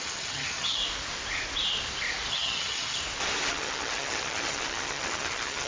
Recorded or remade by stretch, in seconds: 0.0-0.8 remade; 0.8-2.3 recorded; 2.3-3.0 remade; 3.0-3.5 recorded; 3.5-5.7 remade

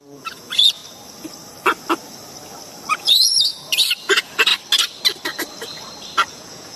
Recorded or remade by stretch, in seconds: 0.0-0.8 remade; 0.8-2.9 recorded; 2.9-3.5 remade; 3.5-4.0 recorded; 4.0-4.5 remade; 4.5-6.3 recorded; 6.3-6.8 remade

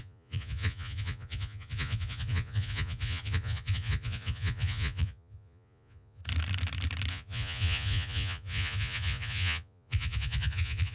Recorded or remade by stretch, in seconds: 0.0-6.2 remade; 6.2-7.1 recorded; 7.1-10.9 remade

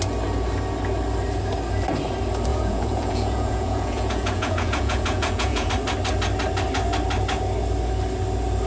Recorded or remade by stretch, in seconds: 0.0-2.5 recorded; 2.5-5.7 remade; 5.7-8.7 recorded

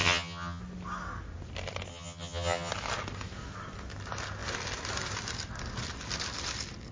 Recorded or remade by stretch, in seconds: 0.0-0.6 remade; 0.6-1.9 recorded; 1.9-2.7 remade; 2.7-6.9 recorded